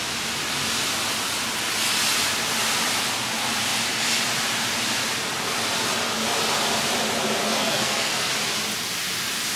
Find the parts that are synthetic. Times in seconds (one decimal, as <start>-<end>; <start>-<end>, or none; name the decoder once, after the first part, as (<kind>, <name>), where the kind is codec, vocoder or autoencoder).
7.4-8.3 (codec, SNAC)